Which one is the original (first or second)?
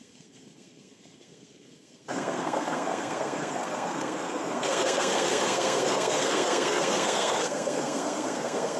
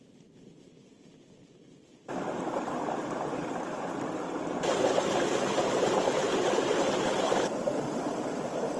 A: second